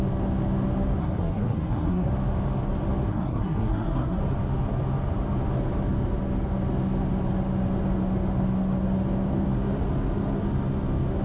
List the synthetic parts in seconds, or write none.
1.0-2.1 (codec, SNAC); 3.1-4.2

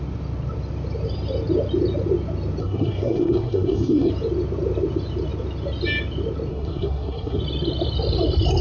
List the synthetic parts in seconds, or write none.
2.6-4.1 (codec, SNAC); 6.5-7.4

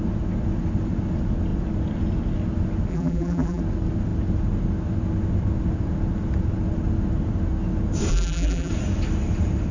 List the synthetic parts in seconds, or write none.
2.9-3.6 (vocoder, BigVGAN v2); 8.1-8.7

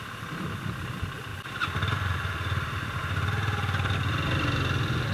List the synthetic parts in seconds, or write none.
none

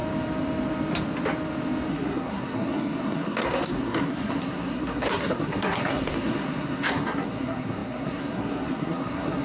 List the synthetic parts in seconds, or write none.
1.9-9.4 (codec, SNAC)

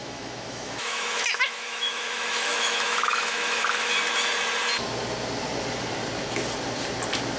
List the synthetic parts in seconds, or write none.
0.0-3.9 (autoencoder, DAC-VAE)

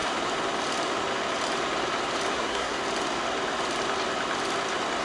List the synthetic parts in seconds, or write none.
2.3-2.8 (codec, SNAC)